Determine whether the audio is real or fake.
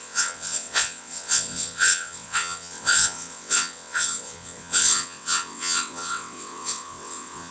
fake